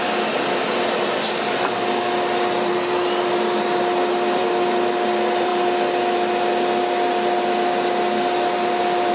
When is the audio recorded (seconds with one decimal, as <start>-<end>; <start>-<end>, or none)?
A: 5.5-9.1